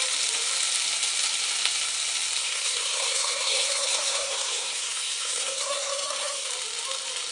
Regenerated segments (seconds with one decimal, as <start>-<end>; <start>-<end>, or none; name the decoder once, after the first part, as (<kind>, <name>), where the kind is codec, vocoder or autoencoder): 2.4-6.5 (codec, SNAC)